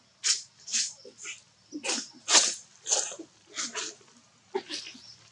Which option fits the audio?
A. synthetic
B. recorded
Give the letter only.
B